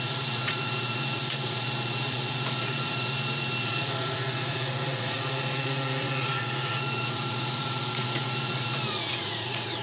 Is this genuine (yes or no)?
no